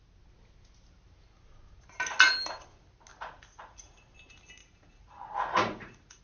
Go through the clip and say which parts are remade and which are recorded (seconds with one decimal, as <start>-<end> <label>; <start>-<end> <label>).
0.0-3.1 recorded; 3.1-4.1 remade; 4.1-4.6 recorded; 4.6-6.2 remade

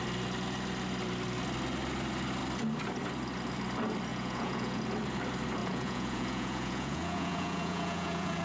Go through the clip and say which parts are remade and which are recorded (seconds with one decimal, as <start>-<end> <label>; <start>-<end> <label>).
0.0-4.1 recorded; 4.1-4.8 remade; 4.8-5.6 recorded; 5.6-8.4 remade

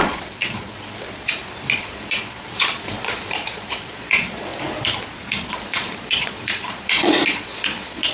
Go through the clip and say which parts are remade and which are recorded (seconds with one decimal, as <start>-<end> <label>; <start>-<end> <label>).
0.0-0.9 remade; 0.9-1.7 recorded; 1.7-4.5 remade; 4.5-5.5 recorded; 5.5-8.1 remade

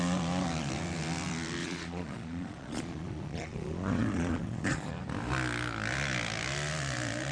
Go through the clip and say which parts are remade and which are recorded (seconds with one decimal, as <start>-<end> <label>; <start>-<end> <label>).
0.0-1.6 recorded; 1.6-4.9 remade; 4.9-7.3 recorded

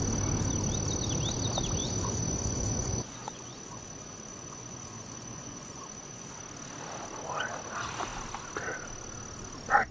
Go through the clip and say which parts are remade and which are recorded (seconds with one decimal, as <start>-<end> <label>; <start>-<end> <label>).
0.0-1.8 recorded; 1.8-6.4 remade; 6.4-9.9 recorded

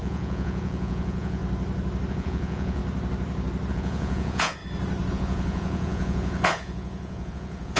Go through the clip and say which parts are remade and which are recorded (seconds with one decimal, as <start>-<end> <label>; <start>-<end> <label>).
0.0-1.4 remade; 1.4-2.1 recorded; 2.1-2.8 remade; 2.8-3.7 recorded; 3.7-4.6 remade; 4.6-5.1 recorded; 5.1-7.8 remade

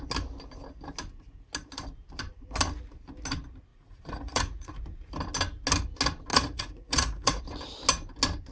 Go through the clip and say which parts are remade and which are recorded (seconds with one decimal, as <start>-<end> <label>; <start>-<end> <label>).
0.0-3.7 recorded; 3.7-4.7 remade; 4.7-6.3 recorded; 6.3-7.4 remade; 7.4-8.5 recorded